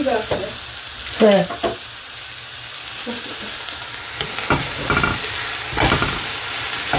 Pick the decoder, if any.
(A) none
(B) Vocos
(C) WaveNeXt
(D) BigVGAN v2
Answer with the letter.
A